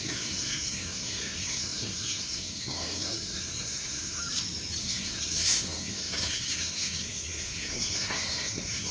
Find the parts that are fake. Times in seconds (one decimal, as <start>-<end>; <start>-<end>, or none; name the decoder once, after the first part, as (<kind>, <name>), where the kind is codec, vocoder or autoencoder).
0.0-4.2 (codec, SNAC); 4.8-8.9